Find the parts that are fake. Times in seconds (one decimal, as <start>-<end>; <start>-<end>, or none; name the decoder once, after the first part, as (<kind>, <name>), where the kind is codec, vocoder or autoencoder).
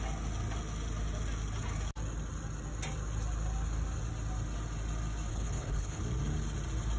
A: 5.3-6.0 (codec, HILCodec)